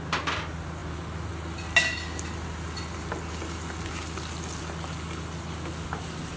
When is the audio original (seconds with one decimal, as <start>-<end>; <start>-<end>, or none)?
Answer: 0.0-6.4